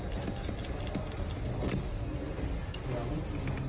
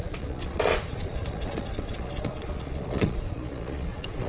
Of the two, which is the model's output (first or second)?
second